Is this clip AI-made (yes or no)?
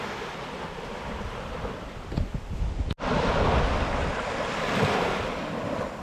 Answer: no